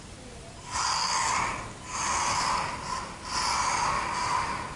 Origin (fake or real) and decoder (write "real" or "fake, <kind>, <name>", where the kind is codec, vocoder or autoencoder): real